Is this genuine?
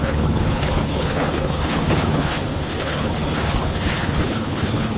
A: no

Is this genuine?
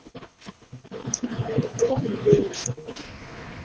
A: no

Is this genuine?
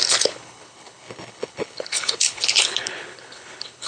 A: no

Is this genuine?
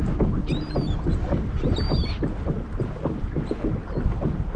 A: yes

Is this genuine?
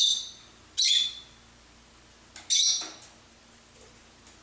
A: yes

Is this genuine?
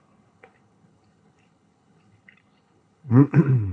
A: no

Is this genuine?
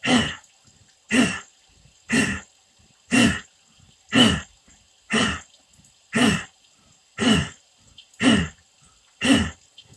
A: yes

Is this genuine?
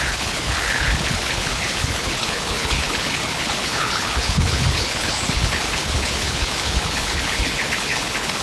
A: no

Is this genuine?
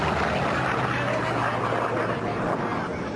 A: yes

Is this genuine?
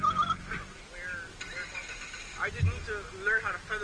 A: yes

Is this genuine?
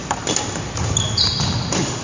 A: yes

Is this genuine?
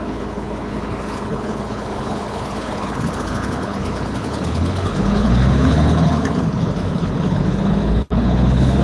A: no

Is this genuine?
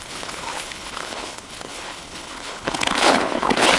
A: no